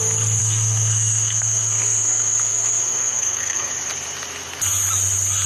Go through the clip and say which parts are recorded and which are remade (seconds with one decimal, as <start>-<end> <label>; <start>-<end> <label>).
0.0-0.4 recorded; 0.4-3.7 remade; 3.7-5.5 recorded

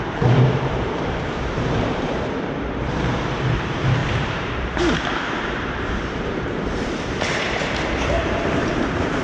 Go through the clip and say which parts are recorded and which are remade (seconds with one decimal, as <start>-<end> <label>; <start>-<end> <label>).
0.0-9.2 remade

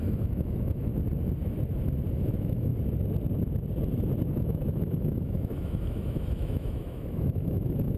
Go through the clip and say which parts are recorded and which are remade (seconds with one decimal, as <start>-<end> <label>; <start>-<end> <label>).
0.0-0.9 remade; 0.9-2.1 recorded; 2.1-2.7 remade; 2.7-4.3 recorded; 4.3-8.0 remade

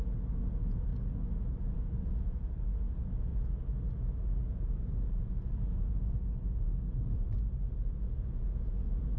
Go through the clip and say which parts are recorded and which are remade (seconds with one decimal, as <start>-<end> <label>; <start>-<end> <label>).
0.0-0.9 remade; 0.9-1.7 recorded; 1.7-3.3 remade; 3.3-5.1 recorded; 5.1-9.2 remade